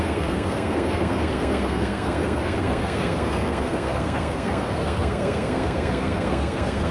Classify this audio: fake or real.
fake